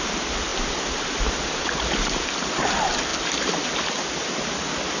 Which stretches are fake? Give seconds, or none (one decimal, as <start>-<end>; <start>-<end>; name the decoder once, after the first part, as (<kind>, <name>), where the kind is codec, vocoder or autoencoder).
none